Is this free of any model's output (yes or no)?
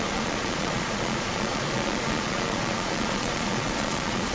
no